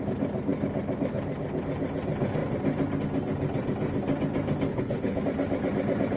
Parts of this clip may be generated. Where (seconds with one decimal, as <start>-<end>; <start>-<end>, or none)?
4.7-5.2